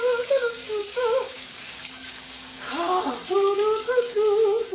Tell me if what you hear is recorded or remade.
remade